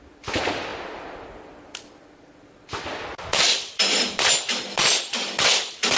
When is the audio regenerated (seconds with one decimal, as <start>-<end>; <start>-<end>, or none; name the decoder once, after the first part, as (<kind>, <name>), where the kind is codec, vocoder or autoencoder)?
none